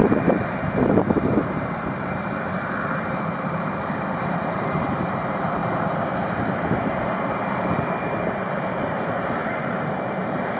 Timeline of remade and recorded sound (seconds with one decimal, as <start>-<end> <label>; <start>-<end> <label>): 0.0-10.6 remade